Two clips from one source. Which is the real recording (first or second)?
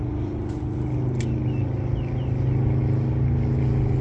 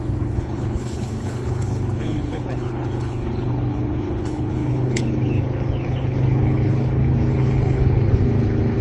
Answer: first